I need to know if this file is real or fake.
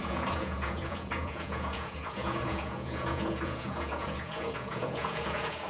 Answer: fake